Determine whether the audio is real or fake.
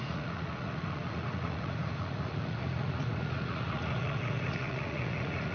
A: fake